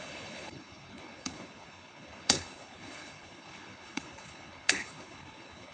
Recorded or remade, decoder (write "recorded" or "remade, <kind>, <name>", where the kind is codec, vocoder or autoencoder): remade, codec, HILCodec